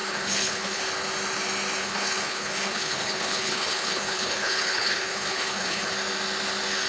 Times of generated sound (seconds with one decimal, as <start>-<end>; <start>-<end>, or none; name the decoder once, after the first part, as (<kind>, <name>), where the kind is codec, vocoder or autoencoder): 0.0-0.8 (codec, HILCodec); 1.8-5.9